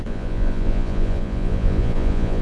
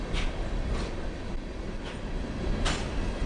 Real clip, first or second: second